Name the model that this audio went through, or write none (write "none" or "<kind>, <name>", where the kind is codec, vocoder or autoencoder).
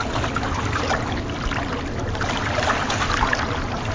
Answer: none